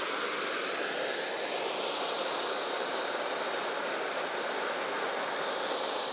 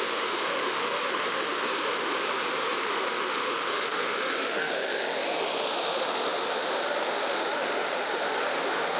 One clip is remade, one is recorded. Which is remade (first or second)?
second